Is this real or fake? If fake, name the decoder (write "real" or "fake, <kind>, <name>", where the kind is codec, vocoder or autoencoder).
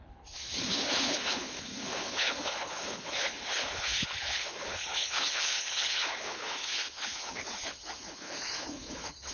fake, codec, HILCodec